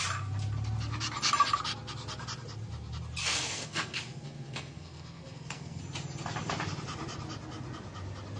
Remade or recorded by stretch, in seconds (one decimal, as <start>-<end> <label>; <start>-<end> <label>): 0.0-3.2 recorded; 3.2-5.8 remade; 5.8-8.4 recorded